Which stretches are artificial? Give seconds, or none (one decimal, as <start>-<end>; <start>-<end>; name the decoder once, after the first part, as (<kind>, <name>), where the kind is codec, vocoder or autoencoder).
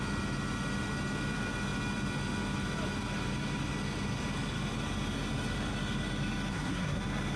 6.5-7.0 (codec, SNAC)